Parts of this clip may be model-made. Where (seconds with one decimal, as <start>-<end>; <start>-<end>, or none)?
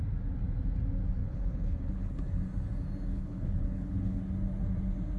1.2-2.2; 3.1-4.2